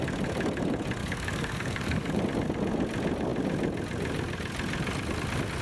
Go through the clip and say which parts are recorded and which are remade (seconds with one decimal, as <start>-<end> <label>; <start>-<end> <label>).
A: 0.0-1.0 recorded; 1.0-2.2 remade; 2.2-5.6 recorded